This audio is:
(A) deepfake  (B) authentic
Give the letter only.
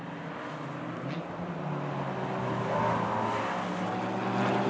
B